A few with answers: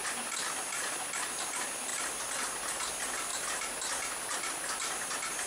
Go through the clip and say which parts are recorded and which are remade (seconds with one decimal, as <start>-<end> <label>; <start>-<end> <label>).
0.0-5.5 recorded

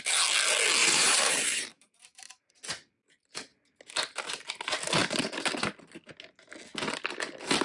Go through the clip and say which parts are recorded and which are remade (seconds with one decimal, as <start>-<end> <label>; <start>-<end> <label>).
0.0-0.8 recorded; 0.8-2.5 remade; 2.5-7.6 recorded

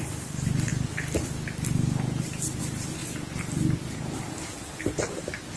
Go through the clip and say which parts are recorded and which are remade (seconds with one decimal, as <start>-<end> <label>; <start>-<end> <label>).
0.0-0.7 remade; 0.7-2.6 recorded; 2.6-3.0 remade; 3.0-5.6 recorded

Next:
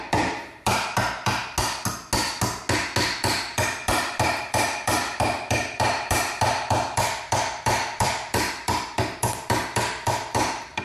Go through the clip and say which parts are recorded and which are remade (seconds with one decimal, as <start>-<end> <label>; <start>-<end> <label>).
0.0-1.4 remade; 1.4-3.2 recorded; 3.2-10.8 remade

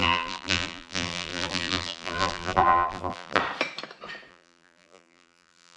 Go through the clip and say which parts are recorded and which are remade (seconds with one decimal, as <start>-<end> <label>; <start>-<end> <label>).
0.0-3.4 remade; 3.4-4.3 recorded; 4.3-5.8 remade